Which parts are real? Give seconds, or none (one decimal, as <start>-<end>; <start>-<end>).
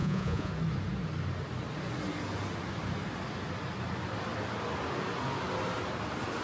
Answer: 0.5-6.4